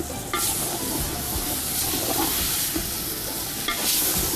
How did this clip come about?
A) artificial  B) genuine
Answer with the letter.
B